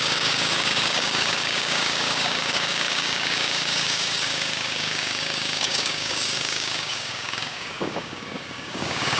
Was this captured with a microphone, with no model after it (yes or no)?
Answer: no